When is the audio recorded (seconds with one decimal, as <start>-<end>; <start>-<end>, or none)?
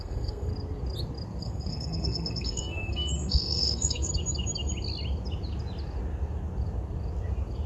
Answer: 0.5-1.4; 4.1-7.7